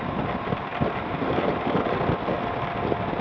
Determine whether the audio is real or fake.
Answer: real